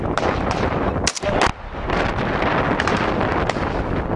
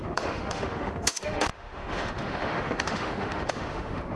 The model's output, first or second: second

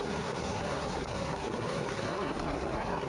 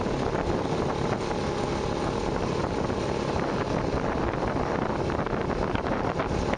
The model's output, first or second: first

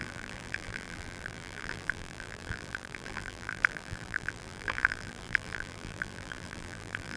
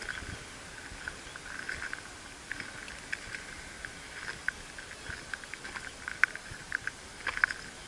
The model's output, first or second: first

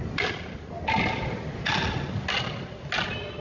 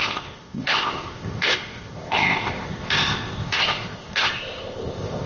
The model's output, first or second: second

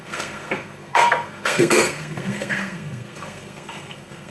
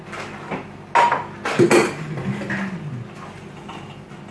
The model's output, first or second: first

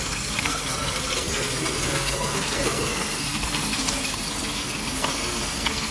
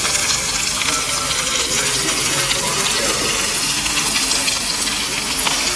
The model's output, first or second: first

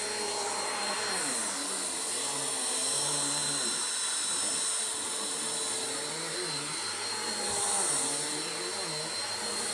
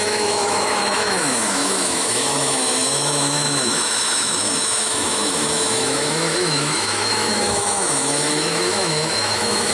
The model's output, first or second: second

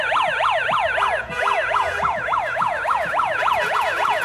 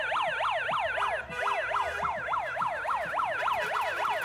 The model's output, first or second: first